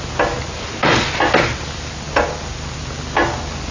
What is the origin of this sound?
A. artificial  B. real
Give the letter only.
B